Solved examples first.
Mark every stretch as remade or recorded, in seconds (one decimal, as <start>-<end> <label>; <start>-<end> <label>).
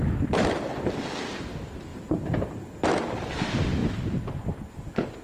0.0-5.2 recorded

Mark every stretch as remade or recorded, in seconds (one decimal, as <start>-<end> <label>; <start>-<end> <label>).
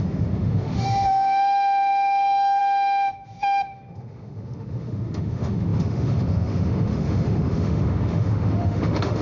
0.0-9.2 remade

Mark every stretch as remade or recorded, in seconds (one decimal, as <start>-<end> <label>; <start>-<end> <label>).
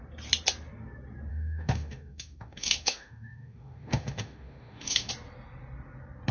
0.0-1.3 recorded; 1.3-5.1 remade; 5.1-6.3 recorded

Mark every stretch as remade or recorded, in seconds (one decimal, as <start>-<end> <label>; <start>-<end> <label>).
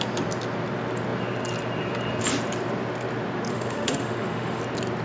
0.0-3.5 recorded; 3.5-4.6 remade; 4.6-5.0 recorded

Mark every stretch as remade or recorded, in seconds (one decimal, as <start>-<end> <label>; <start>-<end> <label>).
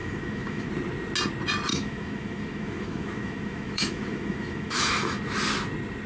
0.0-0.7 remade; 0.7-1.7 recorded; 1.7-5.2 remade; 5.2-6.1 recorded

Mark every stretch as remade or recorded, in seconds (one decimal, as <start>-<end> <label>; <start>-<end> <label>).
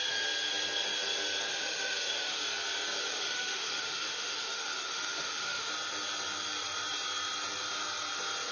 0.0-1.5 recorded; 1.5-2.4 remade; 2.4-3.0 recorded; 3.0-5.7 remade; 5.7-8.5 recorded